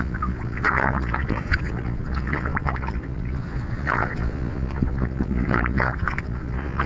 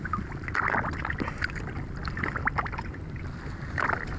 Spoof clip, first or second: first